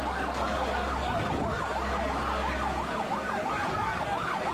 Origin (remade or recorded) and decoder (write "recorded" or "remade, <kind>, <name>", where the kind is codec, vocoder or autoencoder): remade, codec, DAC